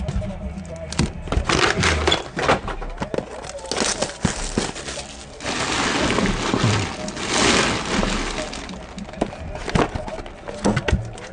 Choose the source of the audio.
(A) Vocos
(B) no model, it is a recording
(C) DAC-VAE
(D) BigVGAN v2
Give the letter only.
B